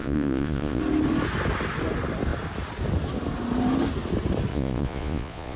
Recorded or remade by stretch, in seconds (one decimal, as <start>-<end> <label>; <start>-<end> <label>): 0.0-0.8 remade; 0.8-4.5 recorded; 4.5-5.6 remade